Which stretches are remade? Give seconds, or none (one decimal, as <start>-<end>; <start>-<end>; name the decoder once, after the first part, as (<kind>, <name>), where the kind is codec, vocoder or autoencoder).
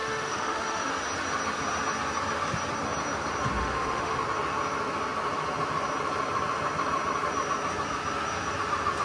0.0-0.9 (autoencoder, DAC-VAE); 3.6-4.2